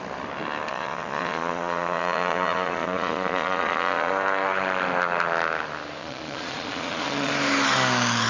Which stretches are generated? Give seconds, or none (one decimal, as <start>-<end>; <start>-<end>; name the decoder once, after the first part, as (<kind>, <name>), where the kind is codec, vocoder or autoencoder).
0.7-4.1 (vocoder, Vocos); 6.0-7.3